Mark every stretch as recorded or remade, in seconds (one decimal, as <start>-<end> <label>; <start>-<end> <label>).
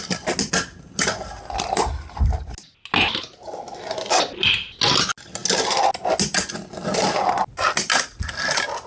0.0-8.9 recorded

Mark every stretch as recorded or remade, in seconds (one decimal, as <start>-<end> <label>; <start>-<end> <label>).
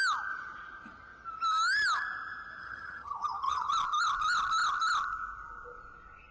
0.0-2.6 recorded; 2.6-3.7 remade; 3.7-6.3 recorded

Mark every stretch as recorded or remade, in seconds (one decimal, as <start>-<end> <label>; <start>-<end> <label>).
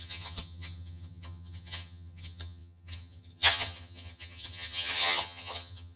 0.0-6.0 remade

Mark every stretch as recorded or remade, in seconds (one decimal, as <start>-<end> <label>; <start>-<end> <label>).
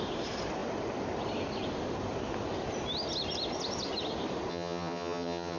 0.0-4.5 recorded; 4.5-5.6 remade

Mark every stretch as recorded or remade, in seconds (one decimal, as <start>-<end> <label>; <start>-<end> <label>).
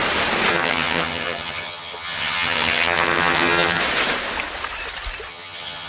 0.0-0.5 recorded; 0.5-3.8 remade; 3.8-5.3 recorded; 5.3-5.9 remade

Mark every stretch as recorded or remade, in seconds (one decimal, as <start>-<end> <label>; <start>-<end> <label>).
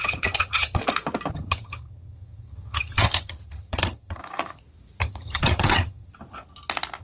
0.0-0.8 remade; 0.8-1.3 recorded; 1.3-4.2 remade; 4.2-5.0 recorded; 5.0-6.1 remade; 6.1-7.0 recorded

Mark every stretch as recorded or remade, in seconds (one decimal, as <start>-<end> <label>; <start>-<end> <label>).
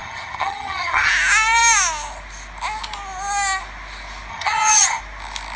0.0-1.1 remade; 1.1-4.3 recorded; 4.3-5.0 remade; 5.0-5.6 recorded